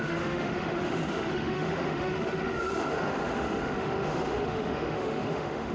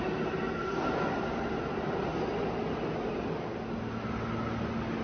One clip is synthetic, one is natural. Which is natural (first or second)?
second